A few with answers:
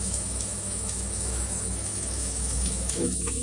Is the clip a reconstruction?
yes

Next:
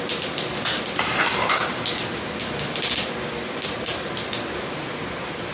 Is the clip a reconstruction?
yes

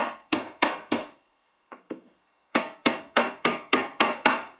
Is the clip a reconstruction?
yes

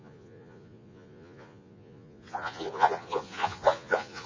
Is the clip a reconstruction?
yes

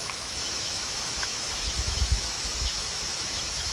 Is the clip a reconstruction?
yes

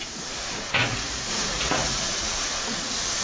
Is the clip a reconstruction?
yes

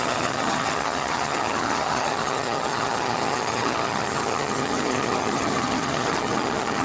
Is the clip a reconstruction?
yes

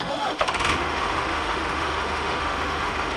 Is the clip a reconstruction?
yes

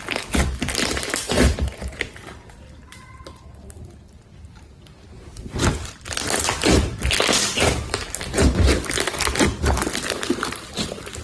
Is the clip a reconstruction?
no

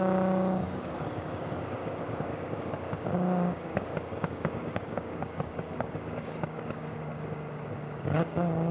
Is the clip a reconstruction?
yes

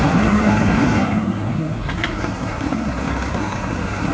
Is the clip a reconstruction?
yes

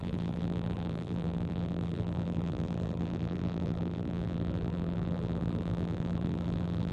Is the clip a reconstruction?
yes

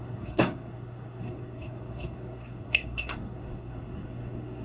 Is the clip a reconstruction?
yes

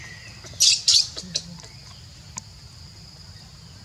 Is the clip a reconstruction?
no